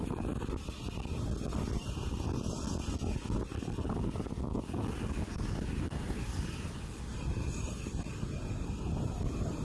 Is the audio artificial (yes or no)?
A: no